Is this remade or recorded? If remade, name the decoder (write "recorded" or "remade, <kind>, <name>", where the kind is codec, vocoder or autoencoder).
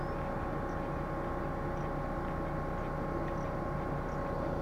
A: recorded